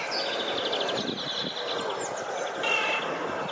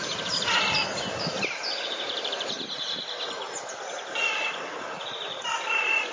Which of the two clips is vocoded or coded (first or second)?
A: second